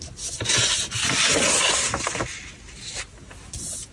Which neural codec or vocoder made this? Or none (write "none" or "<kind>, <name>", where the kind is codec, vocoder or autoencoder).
none